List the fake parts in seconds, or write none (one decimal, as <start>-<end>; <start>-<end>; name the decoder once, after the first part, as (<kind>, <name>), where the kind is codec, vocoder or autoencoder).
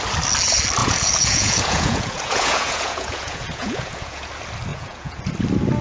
0.8-4.3 (vocoder, Vocos); 4.7-5.3